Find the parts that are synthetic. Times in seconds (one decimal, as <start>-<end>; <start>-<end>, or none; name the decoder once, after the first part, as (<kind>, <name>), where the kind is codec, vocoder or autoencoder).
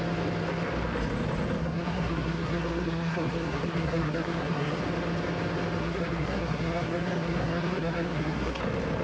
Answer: 1.6-4.8 (codec, SNAC); 5.8-8.6